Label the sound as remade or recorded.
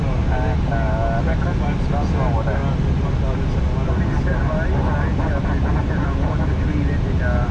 recorded